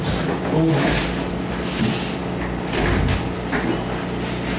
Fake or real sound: real